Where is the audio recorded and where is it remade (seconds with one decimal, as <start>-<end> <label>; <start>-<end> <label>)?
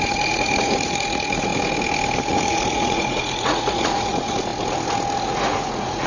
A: 0.0-1.5 remade; 1.5-2.2 recorded; 2.2-4.5 remade; 4.5-5.2 recorded; 5.2-6.1 remade